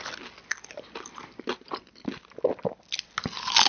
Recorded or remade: recorded